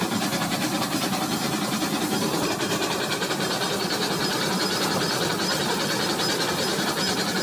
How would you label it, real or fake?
fake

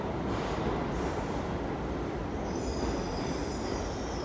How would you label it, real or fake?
fake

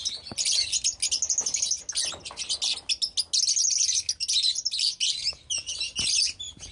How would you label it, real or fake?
real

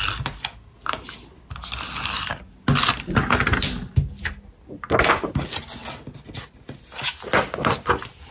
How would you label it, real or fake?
real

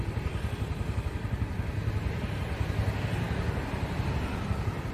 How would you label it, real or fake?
real